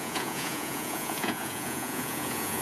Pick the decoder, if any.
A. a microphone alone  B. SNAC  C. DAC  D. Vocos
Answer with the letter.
D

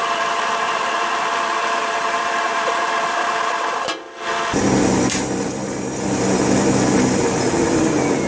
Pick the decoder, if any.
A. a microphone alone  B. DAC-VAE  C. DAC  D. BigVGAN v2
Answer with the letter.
D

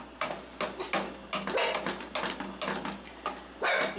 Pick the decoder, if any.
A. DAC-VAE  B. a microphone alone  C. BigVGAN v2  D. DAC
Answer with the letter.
B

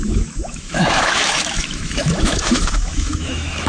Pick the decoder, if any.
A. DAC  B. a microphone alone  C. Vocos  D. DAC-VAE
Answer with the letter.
D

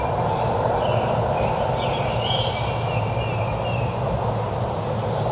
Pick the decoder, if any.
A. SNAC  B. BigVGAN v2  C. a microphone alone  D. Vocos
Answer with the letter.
B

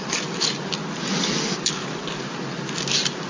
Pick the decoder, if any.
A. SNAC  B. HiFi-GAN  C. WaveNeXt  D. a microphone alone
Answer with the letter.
D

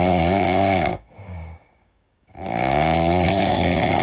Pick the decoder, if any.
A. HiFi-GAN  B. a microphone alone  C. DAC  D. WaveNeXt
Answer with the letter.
C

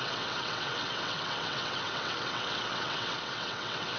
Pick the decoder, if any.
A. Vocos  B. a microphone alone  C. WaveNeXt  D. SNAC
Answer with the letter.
C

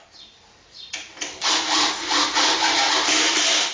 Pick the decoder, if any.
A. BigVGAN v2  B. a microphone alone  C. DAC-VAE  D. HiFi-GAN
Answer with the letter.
B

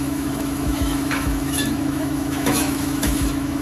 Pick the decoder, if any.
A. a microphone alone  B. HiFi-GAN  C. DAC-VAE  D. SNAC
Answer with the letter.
C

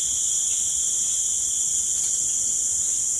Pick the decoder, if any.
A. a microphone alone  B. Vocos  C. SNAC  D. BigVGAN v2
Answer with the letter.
A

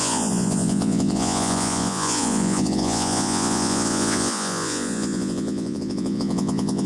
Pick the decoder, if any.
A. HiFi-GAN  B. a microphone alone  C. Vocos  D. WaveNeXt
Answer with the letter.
C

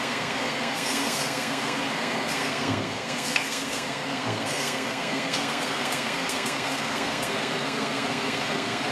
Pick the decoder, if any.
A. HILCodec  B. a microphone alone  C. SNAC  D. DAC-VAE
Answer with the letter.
C